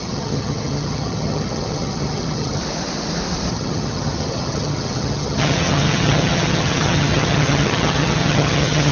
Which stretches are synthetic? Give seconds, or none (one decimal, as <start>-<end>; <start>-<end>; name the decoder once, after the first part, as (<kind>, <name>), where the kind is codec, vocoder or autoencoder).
0.0-2.6 (vocoder, HiFi-GAN); 3.5-8.9